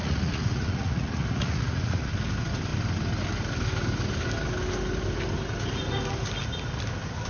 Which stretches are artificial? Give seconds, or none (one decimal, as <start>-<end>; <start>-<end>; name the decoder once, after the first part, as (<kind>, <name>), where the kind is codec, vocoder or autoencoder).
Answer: 0.0-2.1 (vocoder, Vocos)